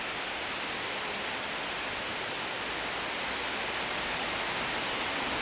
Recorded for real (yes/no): yes